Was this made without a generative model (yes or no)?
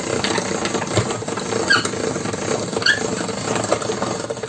yes